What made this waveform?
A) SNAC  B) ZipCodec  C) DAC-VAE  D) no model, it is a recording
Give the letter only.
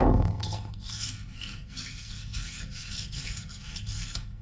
A